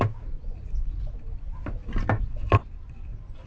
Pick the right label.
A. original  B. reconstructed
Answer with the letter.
A